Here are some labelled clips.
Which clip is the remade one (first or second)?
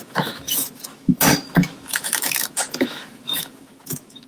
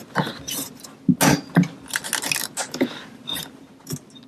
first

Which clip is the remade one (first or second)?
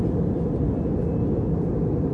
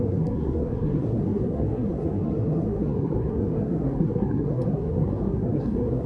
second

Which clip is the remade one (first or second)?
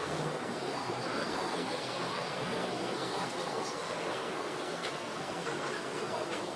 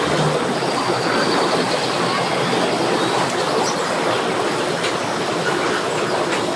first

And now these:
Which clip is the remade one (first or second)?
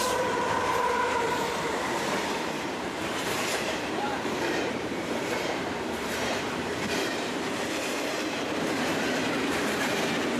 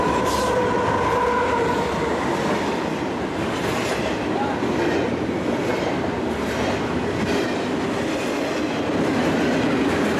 first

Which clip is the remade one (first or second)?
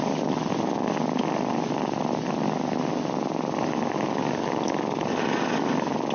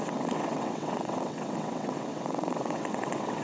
second